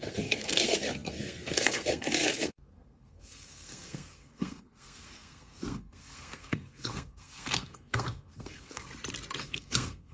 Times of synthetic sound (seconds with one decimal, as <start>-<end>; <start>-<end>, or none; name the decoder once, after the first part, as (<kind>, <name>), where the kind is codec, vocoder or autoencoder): 0.0-8.9 (codec, SNAC); 9.4-10.1